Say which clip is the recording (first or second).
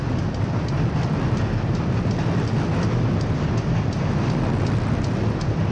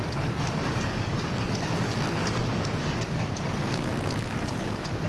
first